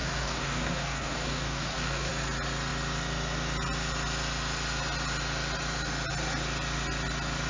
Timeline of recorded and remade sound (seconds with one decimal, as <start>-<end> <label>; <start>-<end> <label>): 0.0-2.1 remade; 2.1-7.5 recorded